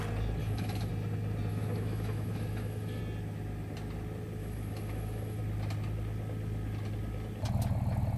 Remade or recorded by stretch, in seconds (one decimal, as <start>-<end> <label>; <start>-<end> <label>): 0.0-0.4 recorded; 0.4-0.9 remade; 0.9-1.5 recorded; 1.5-3.0 remade; 3.0-4.4 recorded; 4.4-5.4 remade; 5.4-8.2 recorded